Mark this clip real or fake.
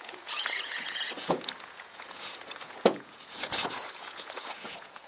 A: fake